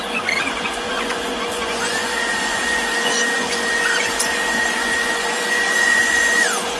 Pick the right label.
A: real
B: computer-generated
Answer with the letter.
B